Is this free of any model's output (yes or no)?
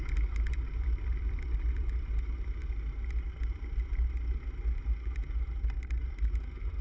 yes